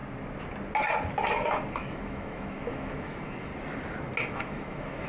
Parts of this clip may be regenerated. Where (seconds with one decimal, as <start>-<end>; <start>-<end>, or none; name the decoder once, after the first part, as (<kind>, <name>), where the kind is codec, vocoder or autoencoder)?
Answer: 1.7-3.5 (autoencoder, DAC-VAE); 4.3-5.1